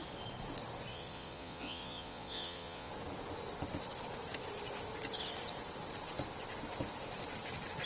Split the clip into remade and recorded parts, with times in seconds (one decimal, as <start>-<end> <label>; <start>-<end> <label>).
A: 0.0-0.9 recorded; 0.9-2.9 remade; 2.9-7.9 recorded